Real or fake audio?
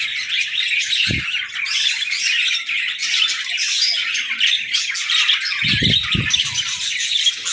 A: real